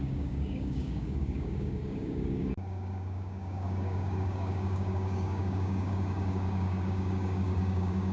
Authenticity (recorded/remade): remade